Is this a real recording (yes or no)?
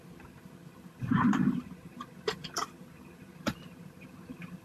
no